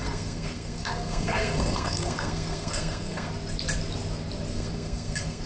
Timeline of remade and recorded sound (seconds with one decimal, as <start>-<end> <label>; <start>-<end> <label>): 0.0-3.3 remade; 3.3-4.5 recorded; 4.5-5.5 remade